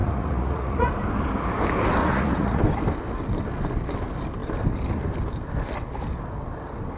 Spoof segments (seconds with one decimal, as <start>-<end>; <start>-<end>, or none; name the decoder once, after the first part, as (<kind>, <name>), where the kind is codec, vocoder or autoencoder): 0.0-0.9 (vocoder, Vocos); 2.0-2.6